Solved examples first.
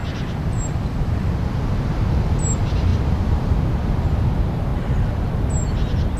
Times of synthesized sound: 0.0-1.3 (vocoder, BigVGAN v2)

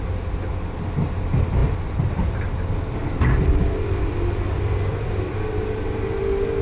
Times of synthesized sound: 1.6-5.6 (vocoder, BigVGAN v2)

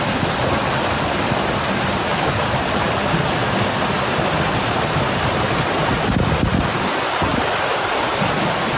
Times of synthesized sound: 2.1-3.2 (vocoder, BigVGAN v2); 5.9-6.6; 7.3-7.9

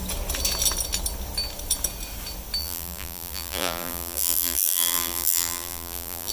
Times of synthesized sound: 2.6-6.3 (vocoder, BigVGAN v2)

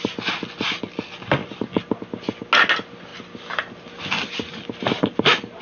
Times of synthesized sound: none

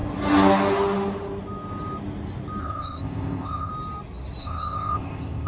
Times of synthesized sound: 2.6-3.7 (codec, ZipCodec); 4.4-5.5